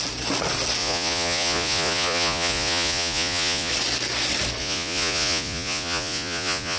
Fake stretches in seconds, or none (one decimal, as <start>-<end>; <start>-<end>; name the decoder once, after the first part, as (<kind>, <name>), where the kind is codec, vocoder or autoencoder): 0.8-3.7 (vocoder, Vocos); 4.6-6.8